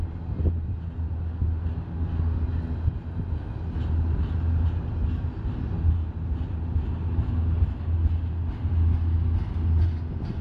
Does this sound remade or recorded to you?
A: recorded